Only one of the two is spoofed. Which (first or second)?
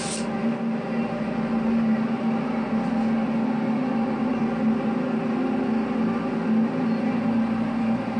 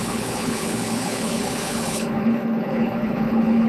second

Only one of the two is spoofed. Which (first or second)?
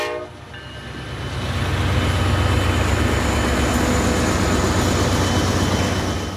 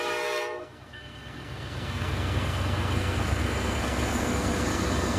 second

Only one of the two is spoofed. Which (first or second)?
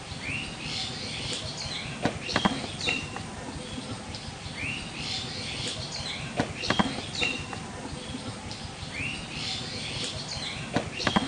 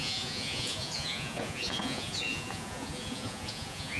second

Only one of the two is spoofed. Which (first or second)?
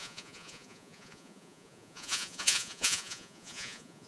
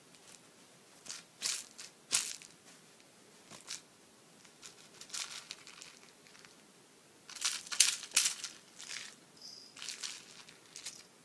first